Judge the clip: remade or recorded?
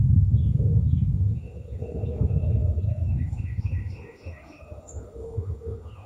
remade